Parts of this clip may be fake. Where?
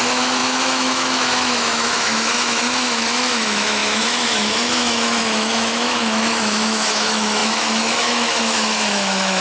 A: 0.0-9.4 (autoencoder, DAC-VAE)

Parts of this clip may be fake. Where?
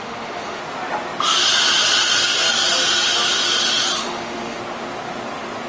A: 0.0-0.6 (autoencoder, DAC-VAE); 4.0-4.6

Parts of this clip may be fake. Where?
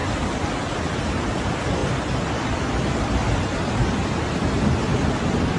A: 0.0-0.9 (vocoder, BigVGAN v2); 1.8-5.6